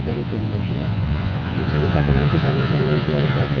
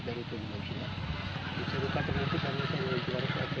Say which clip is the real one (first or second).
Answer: second